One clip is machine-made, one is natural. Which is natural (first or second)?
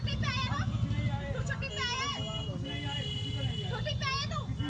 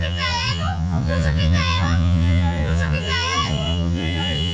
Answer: first